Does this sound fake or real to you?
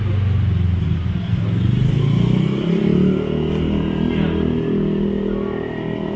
real